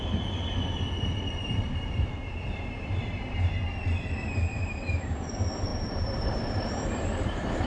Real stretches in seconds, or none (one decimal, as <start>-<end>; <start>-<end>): 0.0-1.4; 3.6-4.4; 5.3-5.7